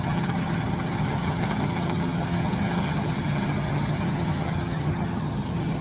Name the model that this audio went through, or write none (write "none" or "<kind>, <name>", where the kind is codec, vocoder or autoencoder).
vocoder, HiFi-GAN